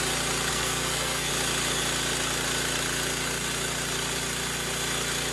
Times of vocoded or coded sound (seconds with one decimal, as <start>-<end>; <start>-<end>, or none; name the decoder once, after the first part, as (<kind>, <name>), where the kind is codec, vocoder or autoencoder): 0.5-1.3 (codec, SNAC)